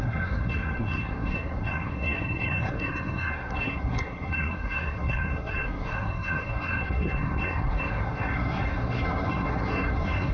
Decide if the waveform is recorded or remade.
remade